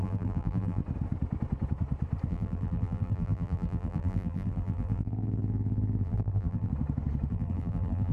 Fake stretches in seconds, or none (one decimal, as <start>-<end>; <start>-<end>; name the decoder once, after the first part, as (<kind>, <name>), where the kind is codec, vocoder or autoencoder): 0.0-0.8 (vocoder, BigVGAN v2); 2.3-6.7; 7.3-8.1